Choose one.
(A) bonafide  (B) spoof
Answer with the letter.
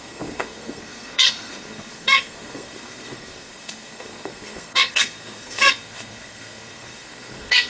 B